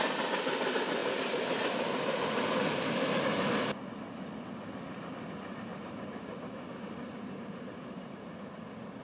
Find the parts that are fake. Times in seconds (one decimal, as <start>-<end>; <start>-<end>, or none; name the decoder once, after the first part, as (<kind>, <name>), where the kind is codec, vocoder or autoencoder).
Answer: 5.7-8.6 (vocoder, BigVGAN v2)